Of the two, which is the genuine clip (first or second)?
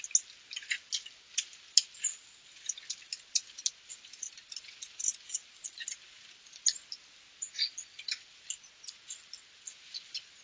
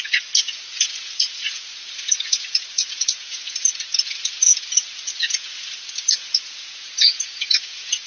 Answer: first